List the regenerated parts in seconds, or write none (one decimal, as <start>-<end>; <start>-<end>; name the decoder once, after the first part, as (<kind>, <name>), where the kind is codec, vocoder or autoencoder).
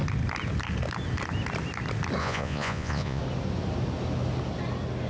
2.2-3.2 (vocoder, Vocos)